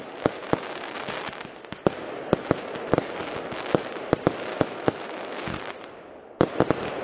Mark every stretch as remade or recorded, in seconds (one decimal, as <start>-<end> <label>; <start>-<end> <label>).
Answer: 0.0-4.5 recorded; 4.5-5.6 remade; 5.6-7.0 recorded